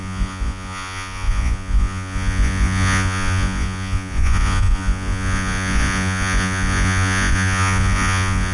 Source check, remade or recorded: remade